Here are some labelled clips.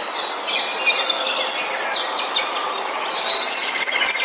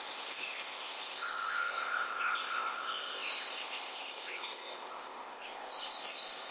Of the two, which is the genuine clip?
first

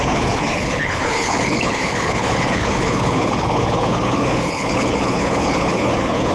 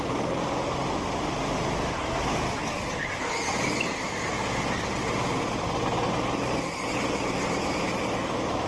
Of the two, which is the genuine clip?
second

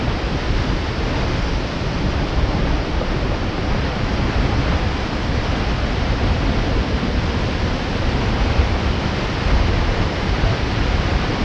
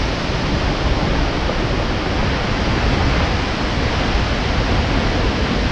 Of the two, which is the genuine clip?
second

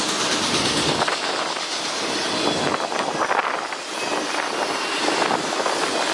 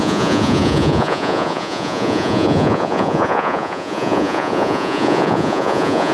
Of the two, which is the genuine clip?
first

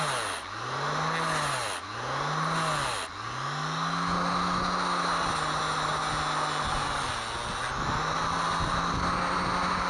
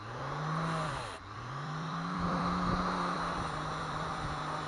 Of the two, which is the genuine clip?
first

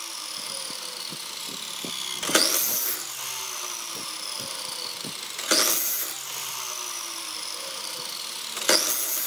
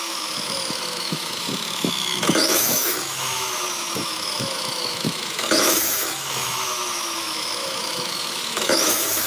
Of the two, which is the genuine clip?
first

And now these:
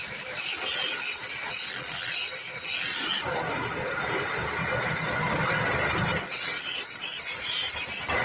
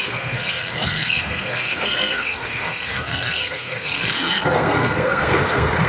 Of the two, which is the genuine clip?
first